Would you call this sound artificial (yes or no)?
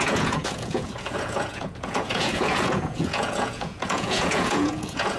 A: yes